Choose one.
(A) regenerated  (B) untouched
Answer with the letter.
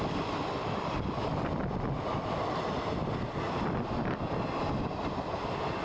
B